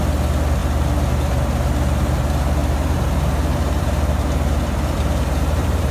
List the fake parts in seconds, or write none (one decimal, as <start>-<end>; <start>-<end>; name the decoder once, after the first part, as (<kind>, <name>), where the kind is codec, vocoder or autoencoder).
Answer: 2.6-5.9 (vocoder, BigVGAN v2)

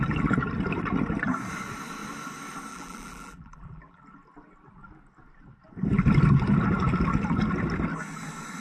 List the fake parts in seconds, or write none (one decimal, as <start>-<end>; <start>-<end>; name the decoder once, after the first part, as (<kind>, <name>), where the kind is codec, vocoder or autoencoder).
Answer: 2.7-4.0 (vocoder, BigVGAN v2)

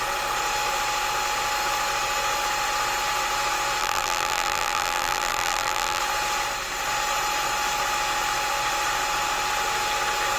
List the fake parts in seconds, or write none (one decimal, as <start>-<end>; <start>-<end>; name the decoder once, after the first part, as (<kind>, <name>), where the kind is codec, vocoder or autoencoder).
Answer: 3.8-6.0 (vocoder, BigVGAN v2)